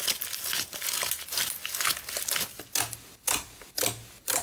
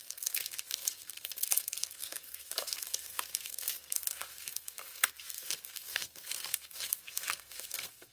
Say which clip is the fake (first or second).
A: second